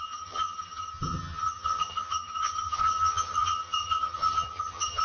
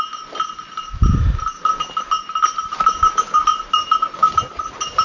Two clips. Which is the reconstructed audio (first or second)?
first